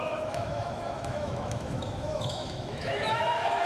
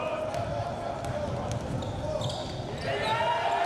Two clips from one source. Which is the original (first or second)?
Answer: second